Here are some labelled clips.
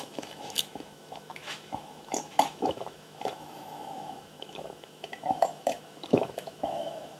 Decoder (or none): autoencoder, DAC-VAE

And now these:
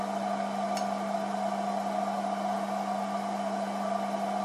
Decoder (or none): none